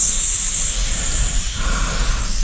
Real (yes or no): yes